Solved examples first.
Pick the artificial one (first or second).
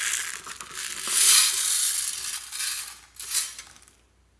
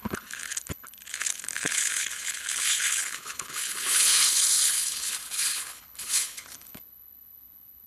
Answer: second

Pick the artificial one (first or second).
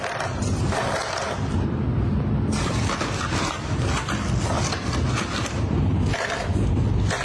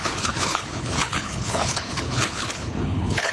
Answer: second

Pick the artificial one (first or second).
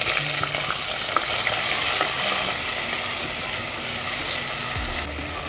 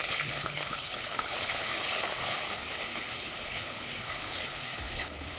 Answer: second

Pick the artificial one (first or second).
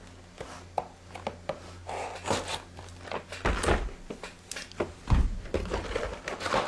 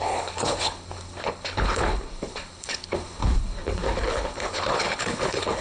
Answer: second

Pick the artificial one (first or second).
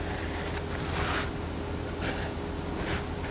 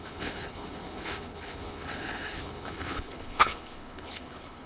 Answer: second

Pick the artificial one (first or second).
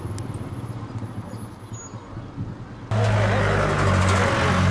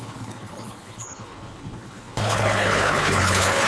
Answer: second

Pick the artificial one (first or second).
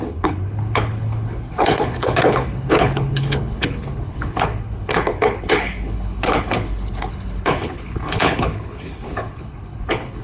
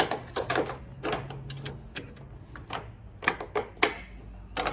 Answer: first